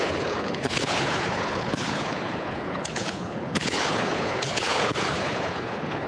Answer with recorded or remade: remade